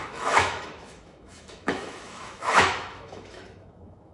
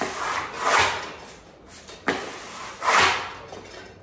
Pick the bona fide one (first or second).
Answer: second